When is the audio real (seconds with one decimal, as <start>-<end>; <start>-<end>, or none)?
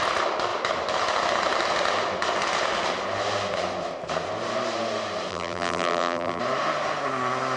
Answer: 0.0-5.3; 6.4-7.6